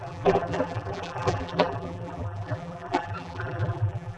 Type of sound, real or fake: fake